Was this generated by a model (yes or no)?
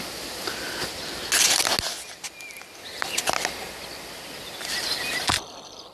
no